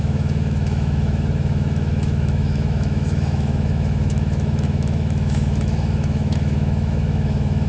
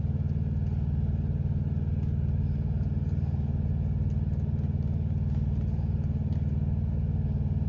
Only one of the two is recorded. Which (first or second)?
second